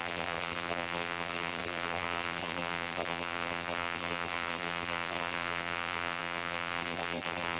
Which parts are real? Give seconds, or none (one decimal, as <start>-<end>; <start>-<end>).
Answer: none